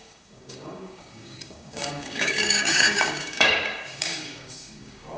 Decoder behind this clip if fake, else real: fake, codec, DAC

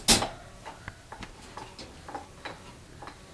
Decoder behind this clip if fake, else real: real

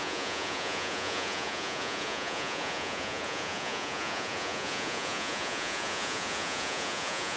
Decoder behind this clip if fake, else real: fake, vocoder, Vocos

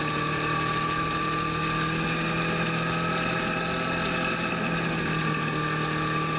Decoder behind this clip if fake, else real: real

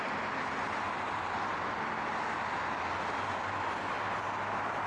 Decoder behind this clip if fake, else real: real